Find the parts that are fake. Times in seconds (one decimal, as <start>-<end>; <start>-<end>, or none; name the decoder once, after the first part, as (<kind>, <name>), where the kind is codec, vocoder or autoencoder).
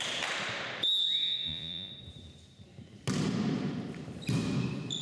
1.0-1.9 (vocoder, Vocos)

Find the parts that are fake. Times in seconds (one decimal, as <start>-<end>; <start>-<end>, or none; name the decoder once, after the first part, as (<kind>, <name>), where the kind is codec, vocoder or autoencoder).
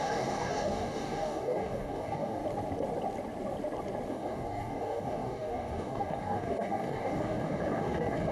0.0-2.4 (codec, DAC); 4.1-8.3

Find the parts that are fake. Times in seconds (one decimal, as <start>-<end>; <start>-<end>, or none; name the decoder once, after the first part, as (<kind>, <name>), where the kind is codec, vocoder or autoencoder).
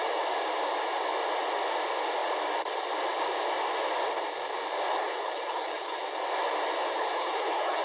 4.9-6.0 (codec, HILCodec); 6.9-7.8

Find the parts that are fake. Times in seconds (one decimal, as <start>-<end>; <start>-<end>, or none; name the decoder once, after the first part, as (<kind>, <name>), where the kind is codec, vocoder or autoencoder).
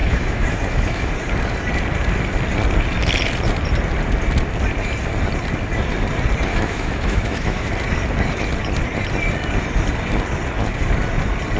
0.0-1.1 (autoencoder, DAC-VAE); 6.5-7.7